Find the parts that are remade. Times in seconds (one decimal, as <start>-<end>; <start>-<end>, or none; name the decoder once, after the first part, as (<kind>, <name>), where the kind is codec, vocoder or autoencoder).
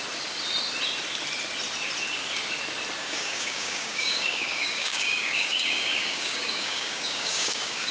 3.0-7.9 (codec, DAC)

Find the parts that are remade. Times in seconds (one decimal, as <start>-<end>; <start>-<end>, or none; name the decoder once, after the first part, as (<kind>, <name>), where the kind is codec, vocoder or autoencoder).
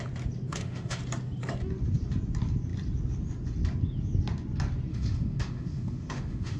0.5-1.0 (autoencoder, DAC-VAE); 4.9-6.6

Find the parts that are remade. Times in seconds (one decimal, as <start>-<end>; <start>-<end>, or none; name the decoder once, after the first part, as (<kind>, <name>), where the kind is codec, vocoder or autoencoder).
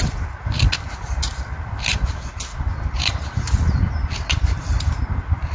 none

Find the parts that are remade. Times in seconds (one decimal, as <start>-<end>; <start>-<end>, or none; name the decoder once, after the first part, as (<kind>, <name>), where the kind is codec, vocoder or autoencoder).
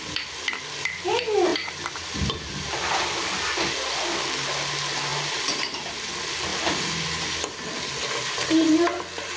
1.5-3.3 (vocoder, BigVGAN v2)